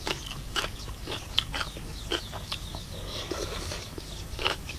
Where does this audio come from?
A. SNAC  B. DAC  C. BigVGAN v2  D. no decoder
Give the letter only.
B